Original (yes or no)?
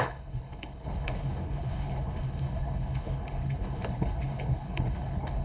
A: no